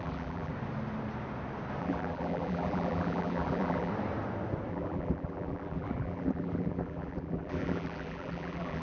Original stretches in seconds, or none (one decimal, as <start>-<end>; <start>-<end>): 0.5-1.8; 3.9-4.7